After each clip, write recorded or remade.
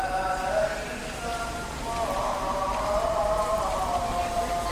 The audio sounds recorded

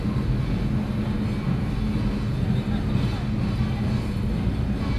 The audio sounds recorded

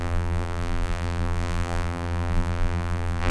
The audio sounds remade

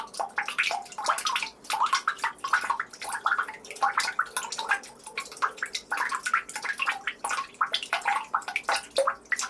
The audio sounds recorded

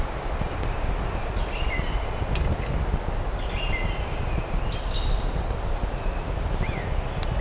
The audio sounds recorded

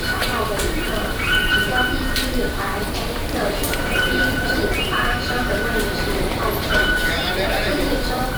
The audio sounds remade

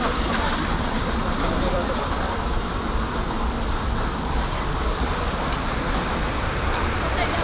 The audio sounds remade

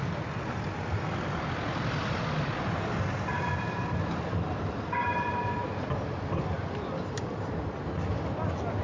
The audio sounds recorded